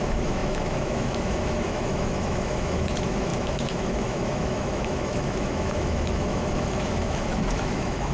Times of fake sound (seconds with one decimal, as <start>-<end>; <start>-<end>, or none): 0.0-8.1